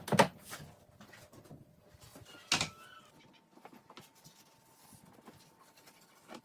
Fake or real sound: real